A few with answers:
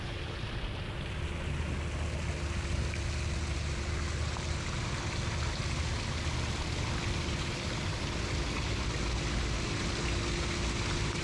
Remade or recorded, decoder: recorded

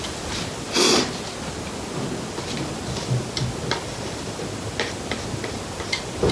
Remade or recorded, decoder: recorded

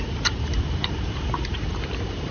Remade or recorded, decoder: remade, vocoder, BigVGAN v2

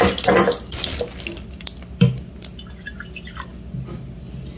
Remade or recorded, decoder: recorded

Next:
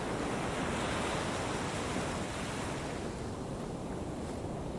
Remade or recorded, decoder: recorded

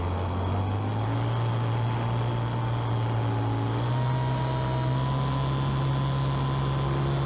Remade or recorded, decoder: recorded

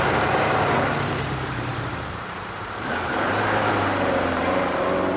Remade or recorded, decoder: remade, vocoder, BigVGAN v2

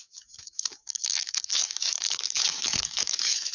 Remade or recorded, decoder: remade, autoencoder, DAC-VAE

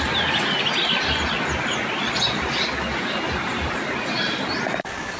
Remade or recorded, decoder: recorded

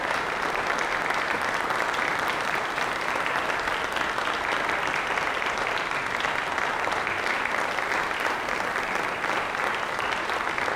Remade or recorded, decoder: recorded